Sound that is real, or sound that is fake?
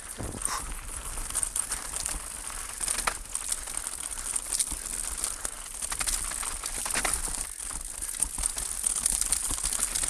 real